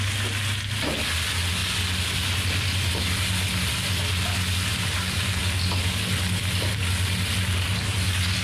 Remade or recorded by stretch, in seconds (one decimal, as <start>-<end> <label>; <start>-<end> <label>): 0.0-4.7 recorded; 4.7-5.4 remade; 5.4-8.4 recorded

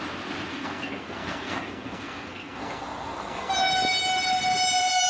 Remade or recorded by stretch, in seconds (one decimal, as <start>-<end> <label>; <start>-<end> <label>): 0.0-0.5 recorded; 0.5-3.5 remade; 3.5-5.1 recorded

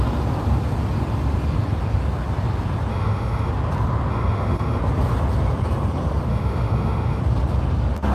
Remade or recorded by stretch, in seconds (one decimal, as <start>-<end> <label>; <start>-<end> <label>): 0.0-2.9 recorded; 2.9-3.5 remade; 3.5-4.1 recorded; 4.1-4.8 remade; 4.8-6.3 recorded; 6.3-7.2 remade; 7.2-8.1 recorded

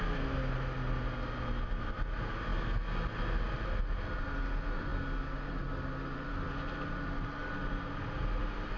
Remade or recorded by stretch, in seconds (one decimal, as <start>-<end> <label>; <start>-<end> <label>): 0.0-8.8 recorded